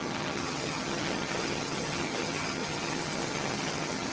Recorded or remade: remade